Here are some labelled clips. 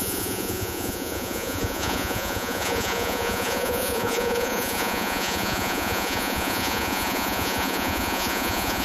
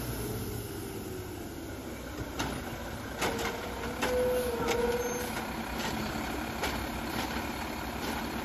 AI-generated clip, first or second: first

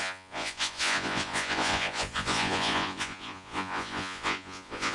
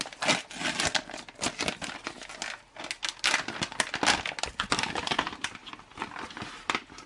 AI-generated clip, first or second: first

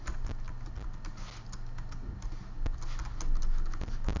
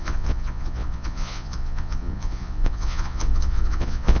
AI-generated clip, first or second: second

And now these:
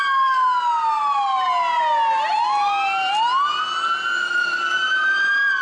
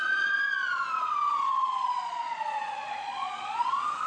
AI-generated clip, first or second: second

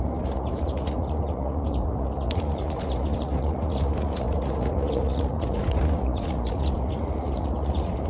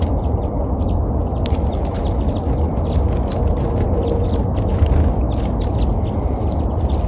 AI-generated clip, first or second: first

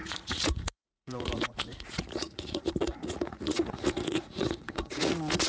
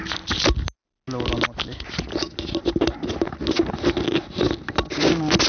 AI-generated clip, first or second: first